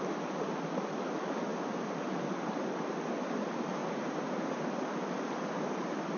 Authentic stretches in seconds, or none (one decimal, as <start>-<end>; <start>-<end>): 0.0-1.5; 2.4-3.8; 4.6-6.2